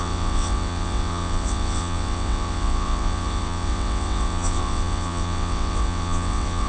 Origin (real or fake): fake